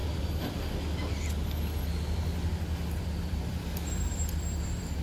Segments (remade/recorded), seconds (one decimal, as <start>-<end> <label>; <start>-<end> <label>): 0.0-3.0 recorded; 3.0-5.0 remade